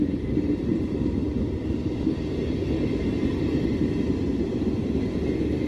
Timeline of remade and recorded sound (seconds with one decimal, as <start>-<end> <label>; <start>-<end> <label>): 0.0-5.7 recorded